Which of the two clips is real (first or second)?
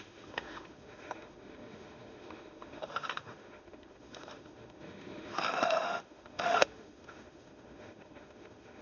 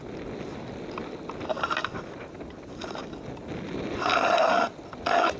second